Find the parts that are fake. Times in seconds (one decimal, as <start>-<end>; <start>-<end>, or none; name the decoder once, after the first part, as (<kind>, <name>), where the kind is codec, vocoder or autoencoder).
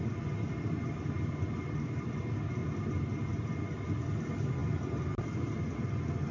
none